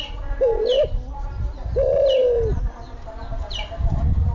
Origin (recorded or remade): recorded